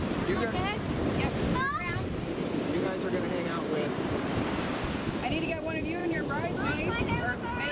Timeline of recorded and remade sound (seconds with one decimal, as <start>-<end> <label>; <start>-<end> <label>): 0.0-1.7 recorded; 1.7-4.7 remade; 4.7-6.0 recorded; 6.0-7.7 remade